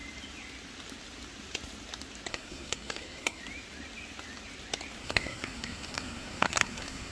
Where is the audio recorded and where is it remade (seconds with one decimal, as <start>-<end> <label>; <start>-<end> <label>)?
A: 0.0-2.3 recorded; 2.3-3.4 remade; 3.4-5.0 recorded; 5.0-7.1 remade